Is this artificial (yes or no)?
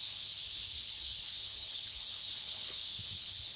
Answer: yes